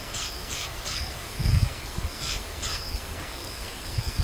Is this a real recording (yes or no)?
no